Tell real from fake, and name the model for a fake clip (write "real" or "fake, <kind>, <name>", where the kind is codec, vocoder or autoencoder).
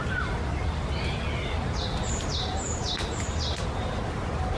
real